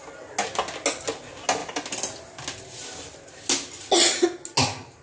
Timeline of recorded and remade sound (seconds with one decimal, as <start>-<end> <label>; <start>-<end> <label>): 0.0-5.0 recorded